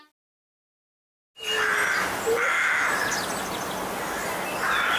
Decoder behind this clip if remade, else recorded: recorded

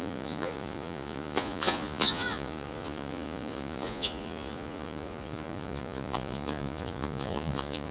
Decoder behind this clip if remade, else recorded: remade, vocoder, Vocos